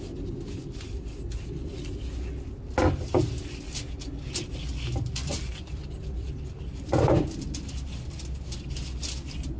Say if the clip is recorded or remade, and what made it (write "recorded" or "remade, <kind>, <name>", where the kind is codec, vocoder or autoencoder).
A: recorded